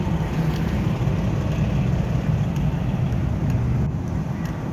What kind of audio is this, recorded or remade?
recorded